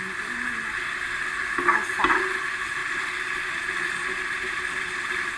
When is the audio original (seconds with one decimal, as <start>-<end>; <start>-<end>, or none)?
0.0-5.4